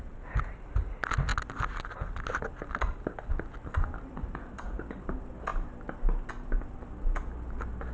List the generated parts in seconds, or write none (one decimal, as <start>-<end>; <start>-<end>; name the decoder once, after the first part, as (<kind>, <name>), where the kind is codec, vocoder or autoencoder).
none